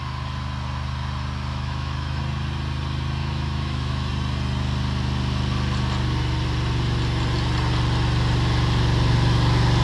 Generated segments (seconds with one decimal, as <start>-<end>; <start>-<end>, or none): 1.5-2.2; 3.2-4.1